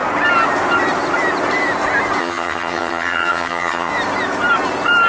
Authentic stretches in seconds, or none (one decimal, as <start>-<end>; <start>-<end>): 0.0-2.2; 3.9-5.1